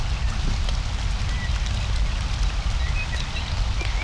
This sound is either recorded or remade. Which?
recorded